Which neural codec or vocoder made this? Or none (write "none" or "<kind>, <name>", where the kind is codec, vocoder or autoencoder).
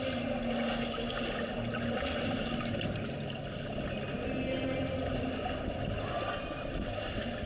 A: none